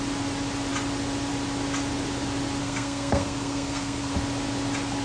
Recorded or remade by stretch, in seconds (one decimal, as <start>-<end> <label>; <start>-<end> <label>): 0.0-2.6 recorded; 2.6-4.1 remade; 4.1-5.0 recorded